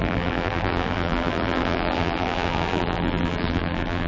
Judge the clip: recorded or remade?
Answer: remade